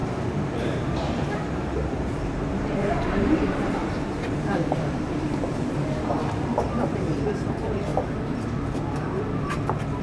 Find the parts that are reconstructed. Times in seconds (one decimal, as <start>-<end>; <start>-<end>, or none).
0.0-7.9; 9.2-10.0